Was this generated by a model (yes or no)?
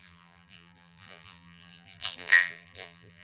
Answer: yes